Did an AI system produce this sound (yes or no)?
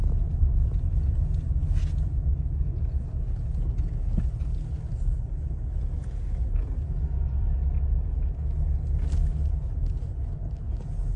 no